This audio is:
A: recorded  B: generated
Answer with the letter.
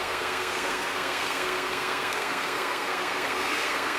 B